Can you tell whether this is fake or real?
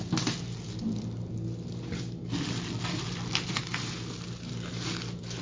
real